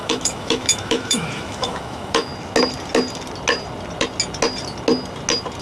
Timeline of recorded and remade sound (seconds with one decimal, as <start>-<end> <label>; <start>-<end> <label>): 0.0-2.3 remade; 2.3-5.6 recorded